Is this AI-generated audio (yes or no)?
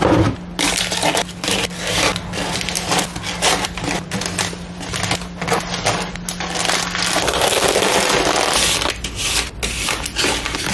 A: no